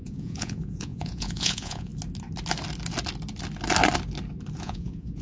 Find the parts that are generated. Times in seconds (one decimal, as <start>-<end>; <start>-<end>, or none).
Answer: 0.0-1.9; 4.6-5.2